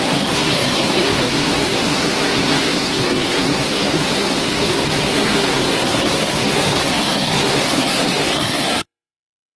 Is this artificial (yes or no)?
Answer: yes